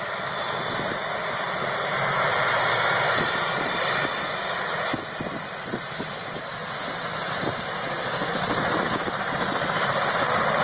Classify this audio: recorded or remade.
recorded